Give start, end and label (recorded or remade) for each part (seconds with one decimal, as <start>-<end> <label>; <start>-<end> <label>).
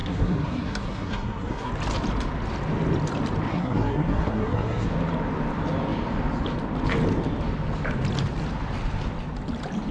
0.0-1.7 remade; 1.7-3.5 recorded; 3.5-4.9 remade; 4.9-9.9 recorded